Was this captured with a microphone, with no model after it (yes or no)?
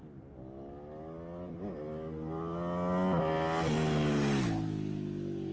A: yes